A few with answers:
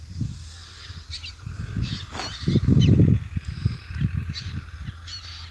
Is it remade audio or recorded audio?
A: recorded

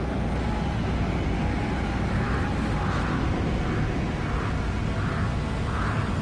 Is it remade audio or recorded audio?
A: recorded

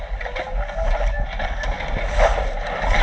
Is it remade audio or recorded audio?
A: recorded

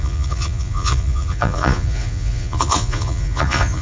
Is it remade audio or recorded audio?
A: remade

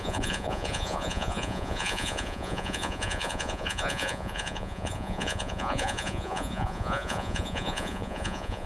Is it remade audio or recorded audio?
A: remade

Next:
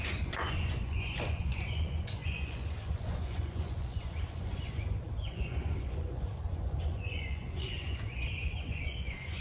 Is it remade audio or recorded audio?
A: remade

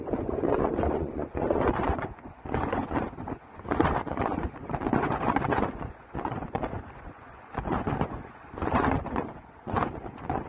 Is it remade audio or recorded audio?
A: remade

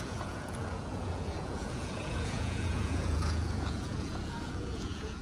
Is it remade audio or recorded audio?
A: remade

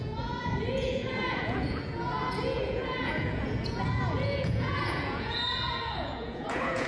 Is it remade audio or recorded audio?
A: remade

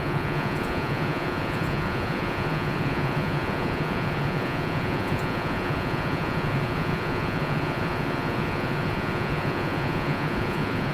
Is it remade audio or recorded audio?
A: remade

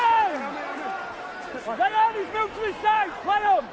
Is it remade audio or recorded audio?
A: recorded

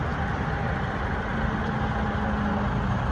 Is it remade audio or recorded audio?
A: recorded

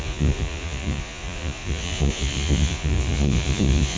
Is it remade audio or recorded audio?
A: remade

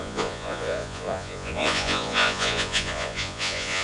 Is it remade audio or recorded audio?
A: remade